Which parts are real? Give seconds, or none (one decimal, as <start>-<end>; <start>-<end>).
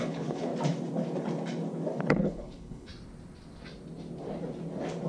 0.5-2.0; 2.9-5.1